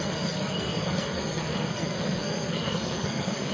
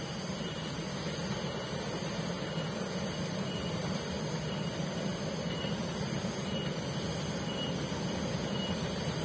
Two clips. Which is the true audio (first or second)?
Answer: second